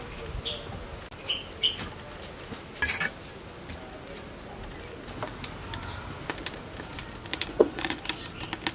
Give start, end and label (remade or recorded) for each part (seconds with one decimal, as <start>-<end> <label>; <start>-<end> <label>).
0.0-7.3 recorded; 7.3-8.0 remade; 8.0-8.7 recorded